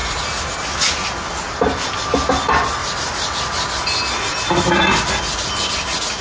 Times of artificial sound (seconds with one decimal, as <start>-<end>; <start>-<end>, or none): none